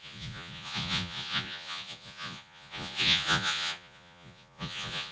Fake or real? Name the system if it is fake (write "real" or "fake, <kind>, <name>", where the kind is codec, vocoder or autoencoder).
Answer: fake, vocoder, Vocos